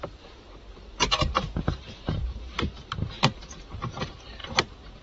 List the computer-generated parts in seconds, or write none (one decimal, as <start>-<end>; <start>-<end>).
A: 0.0-5.0